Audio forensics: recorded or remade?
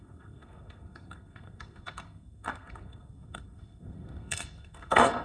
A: remade